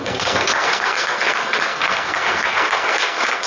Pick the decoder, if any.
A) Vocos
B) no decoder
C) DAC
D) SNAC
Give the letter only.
D